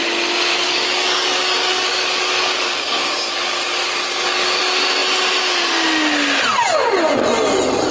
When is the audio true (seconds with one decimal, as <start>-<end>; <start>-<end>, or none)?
0.0-0.5; 4.6-7.9